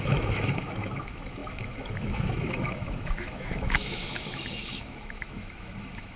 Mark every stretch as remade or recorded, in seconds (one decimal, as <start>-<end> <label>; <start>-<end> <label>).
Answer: 0.0-6.2 remade